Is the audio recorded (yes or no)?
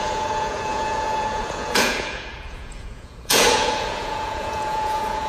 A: no